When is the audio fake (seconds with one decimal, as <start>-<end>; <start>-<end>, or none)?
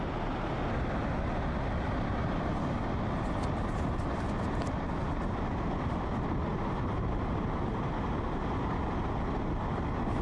none